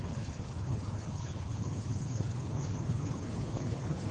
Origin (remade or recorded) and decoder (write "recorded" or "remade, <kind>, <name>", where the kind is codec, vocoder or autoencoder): remade, codec, HILCodec